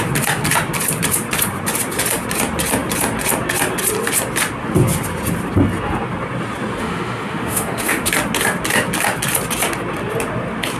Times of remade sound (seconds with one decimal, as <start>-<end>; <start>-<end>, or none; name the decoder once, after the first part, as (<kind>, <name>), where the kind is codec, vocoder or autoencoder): 6.8-8.1 (autoencoder, DAC-VAE)